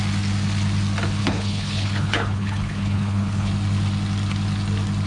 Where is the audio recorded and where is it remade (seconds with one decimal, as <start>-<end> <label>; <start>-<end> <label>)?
0.0-1.2 recorded; 1.2-3.5 remade; 3.5-5.1 recorded